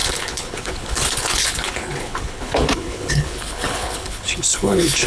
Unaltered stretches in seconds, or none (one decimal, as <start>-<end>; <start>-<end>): none